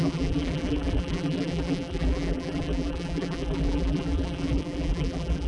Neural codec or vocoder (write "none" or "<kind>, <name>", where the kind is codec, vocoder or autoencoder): vocoder, BigVGAN v2